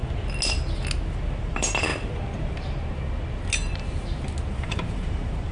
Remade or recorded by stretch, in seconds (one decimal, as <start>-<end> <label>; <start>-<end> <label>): 0.0-1.4 recorded; 1.4-1.9 remade; 1.9-4.5 recorded; 4.5-5.5 remade